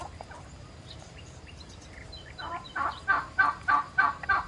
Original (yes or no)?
no